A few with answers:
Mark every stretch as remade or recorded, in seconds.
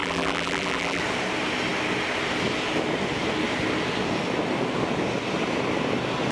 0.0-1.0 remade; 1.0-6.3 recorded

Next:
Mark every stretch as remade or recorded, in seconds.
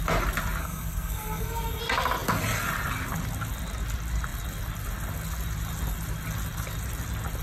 0.0-0.6 recorded; 0.6-1.8 remade; 1.8-7.4 recorded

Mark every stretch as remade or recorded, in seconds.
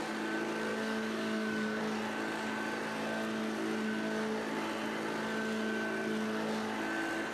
0.0-0.7 recorded; 0.7-1.8 remade; 1.8-7.3 recorded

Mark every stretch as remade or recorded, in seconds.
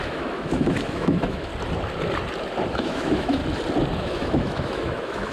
0.0-1.5 remade; 1.5-2.7 recorded; 2.7-3.4 remade; 3.4-4.0 recorded; 4.0-5.3 remade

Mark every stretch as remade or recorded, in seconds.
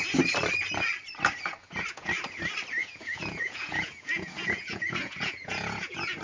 0.0-1.6 recorded; 1.6-2.1 remade; 2.1-2.8 recorded; 2.8-6.2 remade